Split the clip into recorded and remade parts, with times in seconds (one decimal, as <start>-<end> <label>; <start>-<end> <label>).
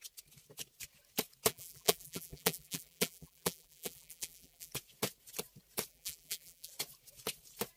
0.0-1.5 recorded; 1.5-4.7 remade; 4.7-5.9 recorded; 5.9-6.7 remade; 6.7-7.8 recorded